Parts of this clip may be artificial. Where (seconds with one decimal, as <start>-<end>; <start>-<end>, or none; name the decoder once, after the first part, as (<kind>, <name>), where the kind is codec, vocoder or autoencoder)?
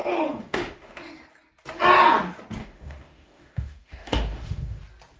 0.0-1.1 (autoencoder, DAC-VAE); 2.6-4.8